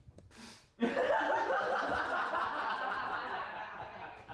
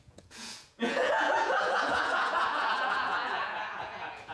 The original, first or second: first